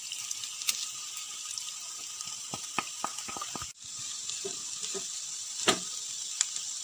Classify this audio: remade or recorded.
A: recorded